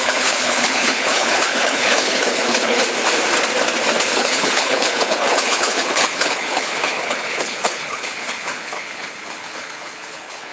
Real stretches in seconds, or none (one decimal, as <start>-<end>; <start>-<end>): 2.8-4.0

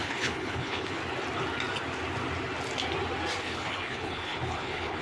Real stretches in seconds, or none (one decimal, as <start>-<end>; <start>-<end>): 1.0-3.4

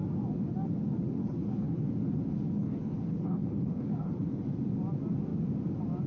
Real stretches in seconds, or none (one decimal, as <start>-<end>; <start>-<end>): 0.0-1.2; 1.8-2.3; 4.5-6.1